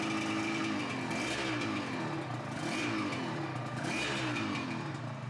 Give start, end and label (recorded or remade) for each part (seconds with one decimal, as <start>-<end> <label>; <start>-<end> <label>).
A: 0.0-5.3 recorded